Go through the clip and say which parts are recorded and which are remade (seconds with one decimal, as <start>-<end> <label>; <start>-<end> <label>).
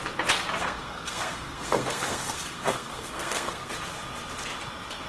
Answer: 0.0-0.6 recorded; 0.6-3.7 remade; 3.7-5.1 recorded